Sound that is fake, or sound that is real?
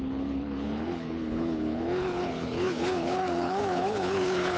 fake